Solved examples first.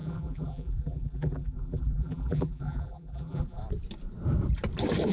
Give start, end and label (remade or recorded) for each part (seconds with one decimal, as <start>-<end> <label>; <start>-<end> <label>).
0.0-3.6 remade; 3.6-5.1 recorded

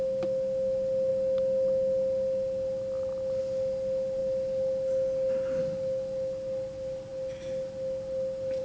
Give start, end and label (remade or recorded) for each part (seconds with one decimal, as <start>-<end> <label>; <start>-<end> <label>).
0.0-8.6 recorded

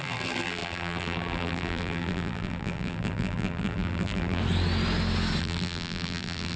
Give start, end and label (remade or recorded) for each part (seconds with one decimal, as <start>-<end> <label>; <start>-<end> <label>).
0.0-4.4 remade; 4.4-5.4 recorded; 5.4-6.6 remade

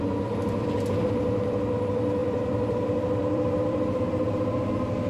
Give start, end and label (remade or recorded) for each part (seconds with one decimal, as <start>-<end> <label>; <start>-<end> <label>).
0.0-2.2 recorded; 2.2-4.1 remade; 4.1-5.1 recorded